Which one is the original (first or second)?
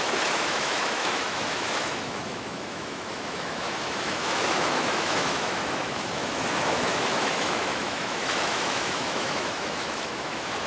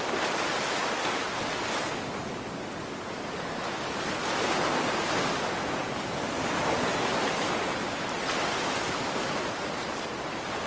second